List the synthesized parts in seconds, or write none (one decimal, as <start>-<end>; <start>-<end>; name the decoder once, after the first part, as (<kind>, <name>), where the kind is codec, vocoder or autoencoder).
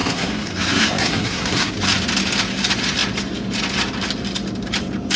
0.0-1.7 (codec, SNAC)